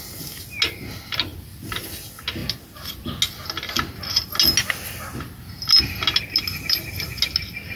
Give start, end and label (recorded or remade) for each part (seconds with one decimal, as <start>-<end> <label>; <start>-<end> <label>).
0.0-7.8 recorded